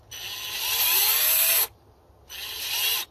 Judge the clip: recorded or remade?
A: recorded